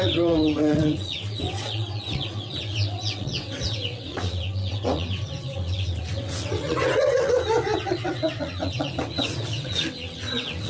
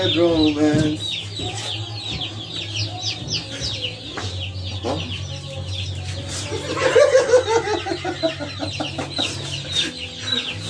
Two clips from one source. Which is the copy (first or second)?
first